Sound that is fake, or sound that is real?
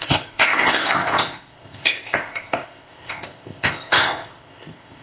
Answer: fake